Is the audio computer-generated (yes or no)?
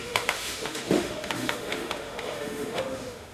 yes